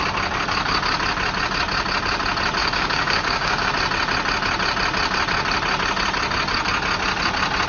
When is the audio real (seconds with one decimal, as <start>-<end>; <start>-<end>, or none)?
0.0-2.6; 3.7-7.7